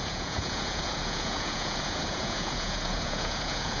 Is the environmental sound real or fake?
fake